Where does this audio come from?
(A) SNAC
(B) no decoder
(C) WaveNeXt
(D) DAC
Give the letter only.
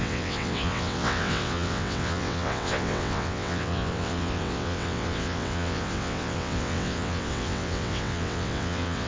C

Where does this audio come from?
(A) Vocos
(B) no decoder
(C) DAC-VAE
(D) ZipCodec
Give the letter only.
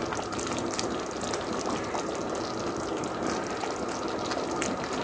B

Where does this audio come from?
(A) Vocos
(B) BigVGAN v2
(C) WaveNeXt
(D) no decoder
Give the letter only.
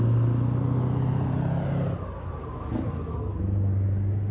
D